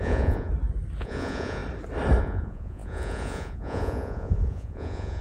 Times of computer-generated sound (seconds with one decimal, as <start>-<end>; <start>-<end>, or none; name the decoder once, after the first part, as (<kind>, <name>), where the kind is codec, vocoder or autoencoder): 0.0-0.5 (vocoder, Vocos); 1.0-1.6; 2.2-5.2